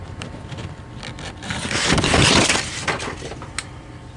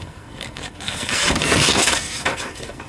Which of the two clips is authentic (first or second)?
first